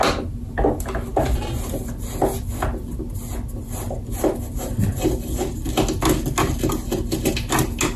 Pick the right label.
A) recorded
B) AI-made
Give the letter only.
A